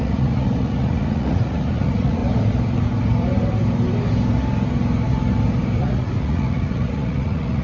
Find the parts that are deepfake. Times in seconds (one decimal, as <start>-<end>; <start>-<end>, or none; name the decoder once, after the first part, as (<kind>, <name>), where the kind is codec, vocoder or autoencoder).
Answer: 0.0-2.2 (vocoder, Vocos); 5.8-7.6

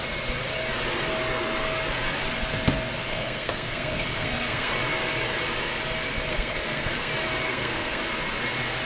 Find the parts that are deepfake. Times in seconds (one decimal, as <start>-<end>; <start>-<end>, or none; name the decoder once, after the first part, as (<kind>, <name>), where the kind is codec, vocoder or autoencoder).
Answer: 3.0-4.7 (codec, SNAC); 6.3-7.1; 7.5-8.0

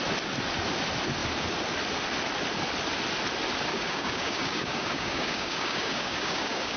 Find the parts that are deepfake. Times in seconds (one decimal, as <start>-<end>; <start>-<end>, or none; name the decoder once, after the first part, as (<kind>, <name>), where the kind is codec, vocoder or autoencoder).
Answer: 3.7-6.8 (codec, DAC)